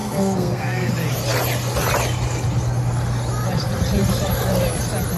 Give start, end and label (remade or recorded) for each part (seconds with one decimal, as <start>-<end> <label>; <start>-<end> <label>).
0.0-0.9 remade; 0.9-5.2 recorded

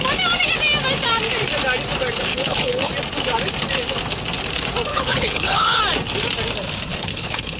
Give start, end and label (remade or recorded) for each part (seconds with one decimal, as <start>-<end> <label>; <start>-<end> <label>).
0.0-2.3 recorded; 2.3-2.9 remade; 2.9-4.9 recorded; 4.9-5.8 remade; 5.8-6.9 recorded; 6.9-7.6 remade

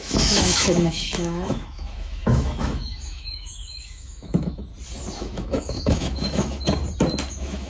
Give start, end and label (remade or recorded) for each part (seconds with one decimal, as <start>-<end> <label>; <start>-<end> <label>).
0.0-4.7 remade; 4.7-5.2 recorded; 5.2-6.8 remade; 6.8-7.3 recorded; 7.3-7.7 remade

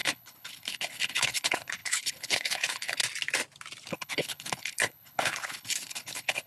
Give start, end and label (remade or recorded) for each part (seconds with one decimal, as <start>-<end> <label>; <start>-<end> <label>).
0.0-3.0 remade; 3.0-3.9 recorded; 3.9-6.5 remade

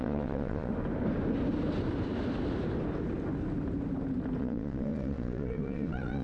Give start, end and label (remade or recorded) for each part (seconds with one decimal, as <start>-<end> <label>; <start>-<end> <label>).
0.0-0.7 remade; 0.7-4.4 recorded; 4.4-6.2 remade

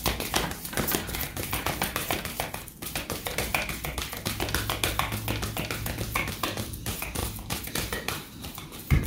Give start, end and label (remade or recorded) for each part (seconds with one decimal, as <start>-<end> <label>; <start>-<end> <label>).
0.0-3.5 remade; 3.5-6.2 recorded; 6.2-7.2 remade; 7.2-7.7 recorded; 7.7-9.1 remade

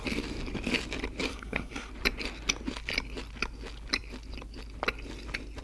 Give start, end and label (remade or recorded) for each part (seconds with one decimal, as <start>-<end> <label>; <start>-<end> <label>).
0.0-1.3 recorded; 1.3-1.9 remade; 1.9-5.6 recorded

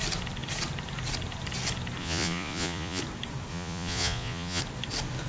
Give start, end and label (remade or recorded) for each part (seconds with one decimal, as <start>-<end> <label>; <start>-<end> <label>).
0.0-2.0 recorded; 2.0-3.0 remade; 3.0-3.5 recorded; 3.5-4.6 remade; 4.6-5.3 recorded